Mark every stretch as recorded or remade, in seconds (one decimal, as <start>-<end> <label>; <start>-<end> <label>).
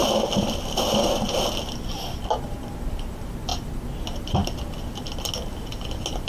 0.0-2.0 remade; 2.0-3.5 recorded; 3.5-4.0 remade; 4.0-6.3 recorded